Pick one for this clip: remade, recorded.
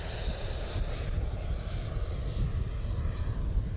recorded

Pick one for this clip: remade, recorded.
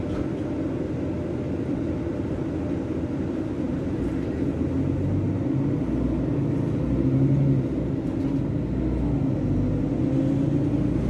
recorded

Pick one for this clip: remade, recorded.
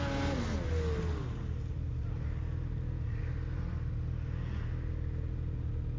recorded